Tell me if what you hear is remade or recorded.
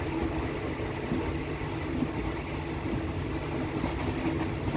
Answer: recorded